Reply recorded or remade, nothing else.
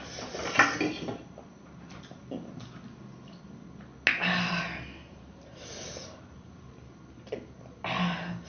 recorded